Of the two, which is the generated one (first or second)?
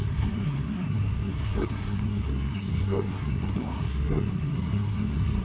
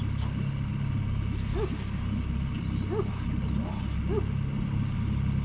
first